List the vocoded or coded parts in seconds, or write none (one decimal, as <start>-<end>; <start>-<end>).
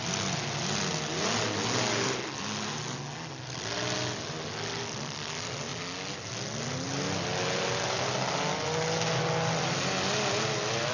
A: none